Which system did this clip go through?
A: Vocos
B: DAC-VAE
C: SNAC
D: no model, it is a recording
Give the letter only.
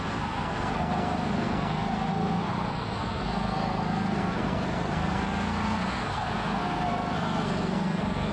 C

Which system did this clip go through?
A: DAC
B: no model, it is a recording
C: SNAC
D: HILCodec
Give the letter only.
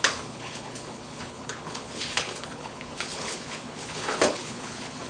D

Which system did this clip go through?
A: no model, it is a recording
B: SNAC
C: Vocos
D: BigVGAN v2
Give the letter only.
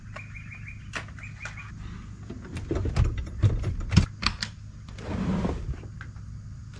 A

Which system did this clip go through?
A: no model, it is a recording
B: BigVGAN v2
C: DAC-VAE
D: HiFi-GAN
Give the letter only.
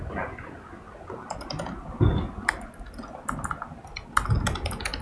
A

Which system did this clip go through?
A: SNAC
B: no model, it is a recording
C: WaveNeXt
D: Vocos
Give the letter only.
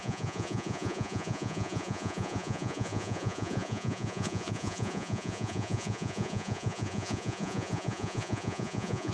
D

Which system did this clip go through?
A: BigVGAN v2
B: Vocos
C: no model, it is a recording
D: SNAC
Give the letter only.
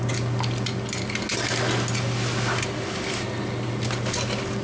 C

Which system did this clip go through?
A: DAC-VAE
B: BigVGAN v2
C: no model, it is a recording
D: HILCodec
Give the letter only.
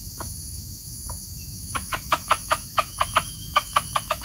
A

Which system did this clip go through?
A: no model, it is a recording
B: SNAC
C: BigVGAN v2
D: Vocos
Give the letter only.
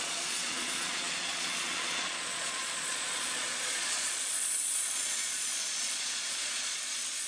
D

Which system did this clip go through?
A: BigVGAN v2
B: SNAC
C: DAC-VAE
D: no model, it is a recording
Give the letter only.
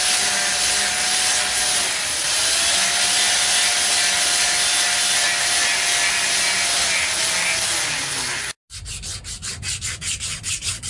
D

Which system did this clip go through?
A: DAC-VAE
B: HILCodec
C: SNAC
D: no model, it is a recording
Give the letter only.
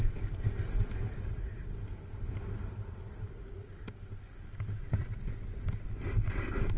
D